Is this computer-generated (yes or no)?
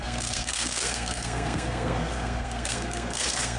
yes